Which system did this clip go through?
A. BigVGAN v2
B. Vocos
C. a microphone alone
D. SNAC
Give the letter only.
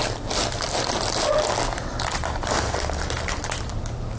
C